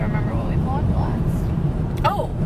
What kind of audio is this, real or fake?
fake